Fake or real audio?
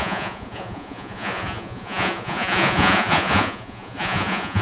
fake